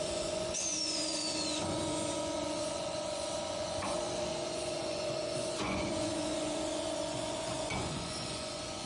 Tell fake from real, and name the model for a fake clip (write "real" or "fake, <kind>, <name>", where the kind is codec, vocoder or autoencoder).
fake, vocoder, Vocos